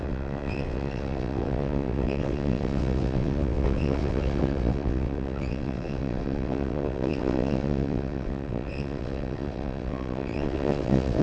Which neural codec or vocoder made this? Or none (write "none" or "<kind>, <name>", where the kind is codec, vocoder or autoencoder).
vocoder, WaveNeXt